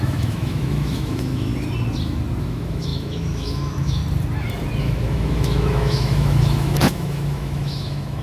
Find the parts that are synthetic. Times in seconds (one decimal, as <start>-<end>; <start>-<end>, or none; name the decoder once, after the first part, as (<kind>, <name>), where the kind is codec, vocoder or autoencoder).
0.0-1.5 (autoencoder, DAC-VAE); 2.4-4.0; 4.8-8.2